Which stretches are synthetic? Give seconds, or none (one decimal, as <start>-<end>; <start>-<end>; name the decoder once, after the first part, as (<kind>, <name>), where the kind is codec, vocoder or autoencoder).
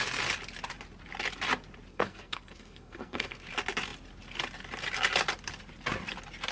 1.9-3.5 (codec, SNAC)